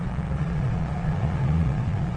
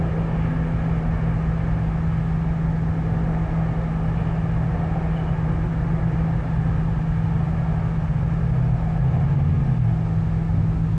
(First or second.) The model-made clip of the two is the first